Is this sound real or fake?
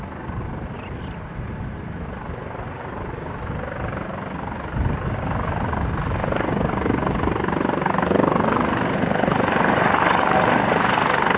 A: real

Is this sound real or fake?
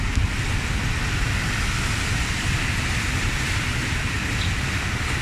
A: real